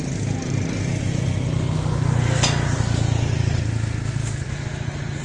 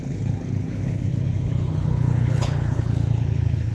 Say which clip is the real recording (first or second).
first